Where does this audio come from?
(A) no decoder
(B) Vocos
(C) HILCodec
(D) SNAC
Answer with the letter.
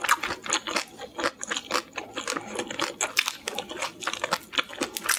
A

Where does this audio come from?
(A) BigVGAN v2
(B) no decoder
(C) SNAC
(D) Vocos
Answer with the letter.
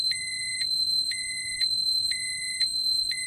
D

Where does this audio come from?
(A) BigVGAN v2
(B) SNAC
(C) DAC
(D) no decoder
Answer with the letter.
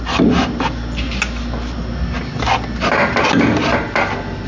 D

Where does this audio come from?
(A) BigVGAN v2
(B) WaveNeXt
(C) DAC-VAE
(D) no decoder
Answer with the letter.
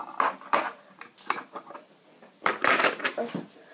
A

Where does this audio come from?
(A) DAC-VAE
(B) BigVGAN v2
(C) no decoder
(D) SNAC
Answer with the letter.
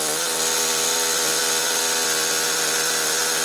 C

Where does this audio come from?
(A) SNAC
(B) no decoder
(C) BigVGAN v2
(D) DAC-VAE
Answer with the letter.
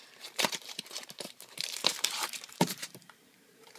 C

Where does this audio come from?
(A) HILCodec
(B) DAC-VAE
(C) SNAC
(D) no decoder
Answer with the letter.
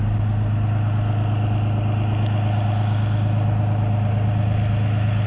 D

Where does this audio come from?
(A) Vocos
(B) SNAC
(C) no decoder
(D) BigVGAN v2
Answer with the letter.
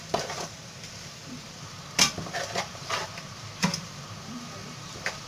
D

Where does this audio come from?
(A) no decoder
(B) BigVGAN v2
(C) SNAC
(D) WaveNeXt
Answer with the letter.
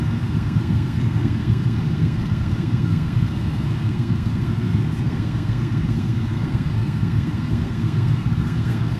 C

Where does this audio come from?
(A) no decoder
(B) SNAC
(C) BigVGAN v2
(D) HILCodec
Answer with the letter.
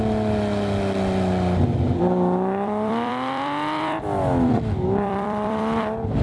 C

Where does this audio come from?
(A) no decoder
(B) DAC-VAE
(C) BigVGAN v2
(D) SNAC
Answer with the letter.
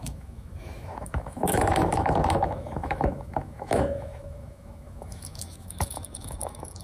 B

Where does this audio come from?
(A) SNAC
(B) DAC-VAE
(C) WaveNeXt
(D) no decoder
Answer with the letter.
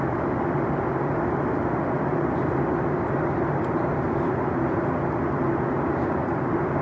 D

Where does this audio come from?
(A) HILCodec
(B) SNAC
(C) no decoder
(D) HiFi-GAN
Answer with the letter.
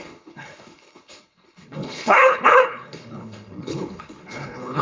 A